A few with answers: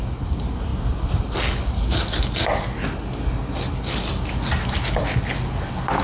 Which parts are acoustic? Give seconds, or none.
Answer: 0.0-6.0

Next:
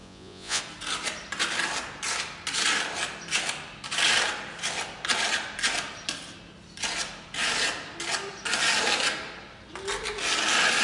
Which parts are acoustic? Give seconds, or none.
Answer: 0.6-10.8

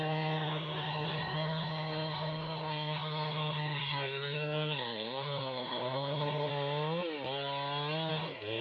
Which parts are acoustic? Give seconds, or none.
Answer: 6.5-8.1

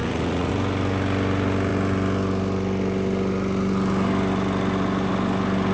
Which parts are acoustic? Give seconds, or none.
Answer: 0.5-5.7

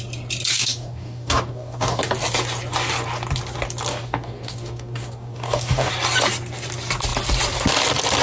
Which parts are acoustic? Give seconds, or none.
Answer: 0.0-0.5; 2.0-3.9; 5.9-8.2